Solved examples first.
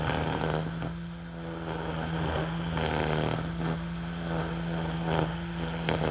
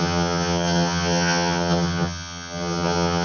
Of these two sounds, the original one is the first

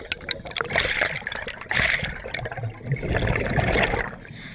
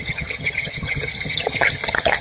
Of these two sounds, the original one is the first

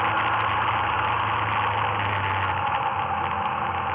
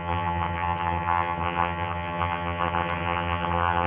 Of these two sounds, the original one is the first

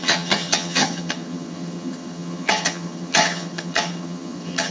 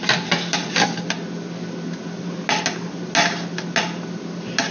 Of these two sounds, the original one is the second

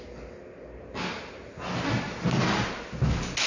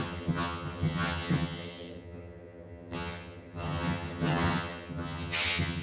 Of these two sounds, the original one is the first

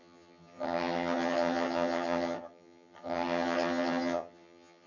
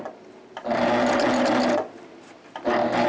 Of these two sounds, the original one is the second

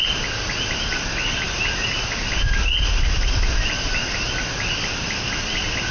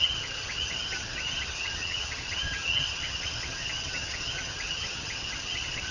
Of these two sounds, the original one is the first